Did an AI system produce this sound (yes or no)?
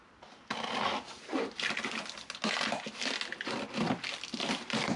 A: no